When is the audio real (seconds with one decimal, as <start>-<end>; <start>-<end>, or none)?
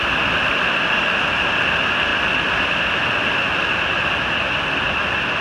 0.0-2.1; 3.1-5.4